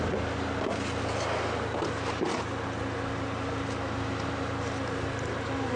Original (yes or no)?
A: yes